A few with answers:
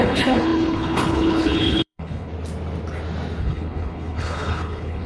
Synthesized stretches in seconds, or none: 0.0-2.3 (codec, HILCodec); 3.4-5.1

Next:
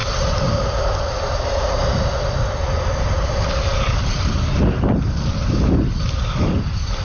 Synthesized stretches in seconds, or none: none

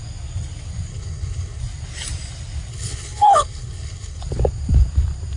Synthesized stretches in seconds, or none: 0.9-1.6 (codec, HILCodec); 2.7-4.2

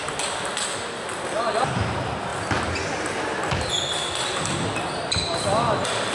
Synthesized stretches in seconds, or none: none